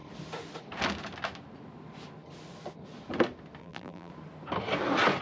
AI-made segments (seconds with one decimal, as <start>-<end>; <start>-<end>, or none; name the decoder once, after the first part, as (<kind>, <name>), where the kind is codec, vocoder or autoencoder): 3.6-4.1 (vocoder, BigVGAN v2)